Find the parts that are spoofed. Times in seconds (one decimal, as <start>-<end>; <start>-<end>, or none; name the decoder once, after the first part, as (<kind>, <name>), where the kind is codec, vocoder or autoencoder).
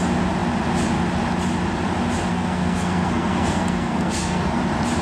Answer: 2.3-4.6 (codec, SNAC)